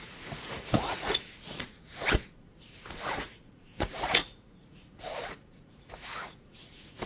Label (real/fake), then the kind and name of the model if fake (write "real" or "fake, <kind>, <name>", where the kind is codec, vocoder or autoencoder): fake, vocoder, Vocos